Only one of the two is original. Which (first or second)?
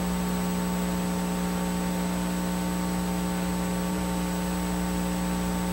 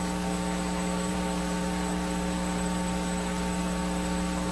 first